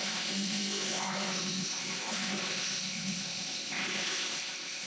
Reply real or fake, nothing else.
fake